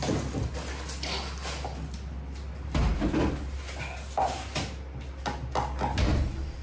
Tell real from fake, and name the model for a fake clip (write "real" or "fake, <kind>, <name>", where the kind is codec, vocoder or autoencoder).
real